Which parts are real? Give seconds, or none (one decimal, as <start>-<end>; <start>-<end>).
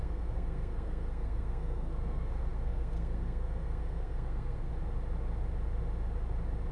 4.7-6.7